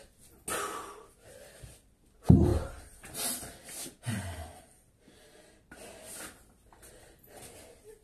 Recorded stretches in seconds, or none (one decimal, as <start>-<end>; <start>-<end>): 0.0-8.0